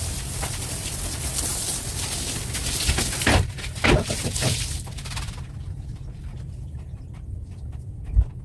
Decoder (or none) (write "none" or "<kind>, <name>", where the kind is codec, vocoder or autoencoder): vocoder, BigVGAN v2